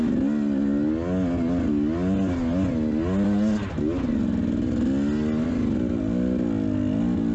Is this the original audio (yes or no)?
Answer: yes